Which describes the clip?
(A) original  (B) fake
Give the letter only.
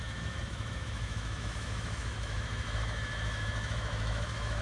B